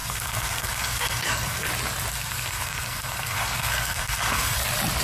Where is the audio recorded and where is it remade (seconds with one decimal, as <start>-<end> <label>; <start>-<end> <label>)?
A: 0.0-1.7 remade; 1.7-2.1 recorded; 2.1-4.6 remade; 4.6-5.0 recorded